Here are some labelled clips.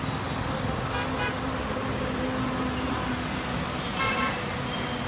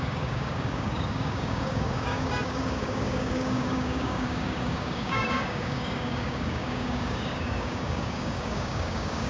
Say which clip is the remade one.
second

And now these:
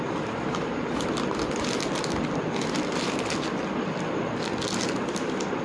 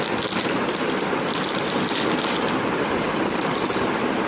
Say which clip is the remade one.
second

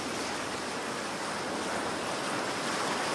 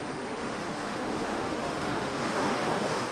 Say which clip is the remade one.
second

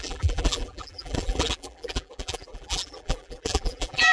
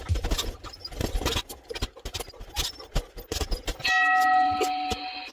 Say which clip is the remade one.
first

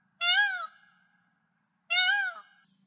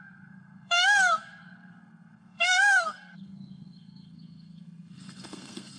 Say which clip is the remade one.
second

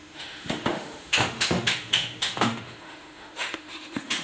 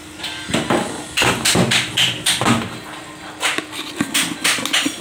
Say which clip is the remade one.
first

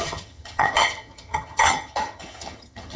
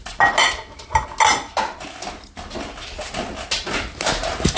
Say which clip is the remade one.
first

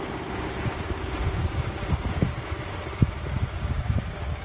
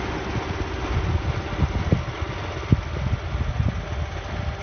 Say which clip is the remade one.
first